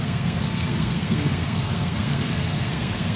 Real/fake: fake